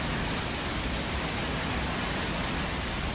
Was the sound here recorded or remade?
recorded